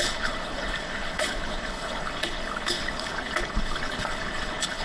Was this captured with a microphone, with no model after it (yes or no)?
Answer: no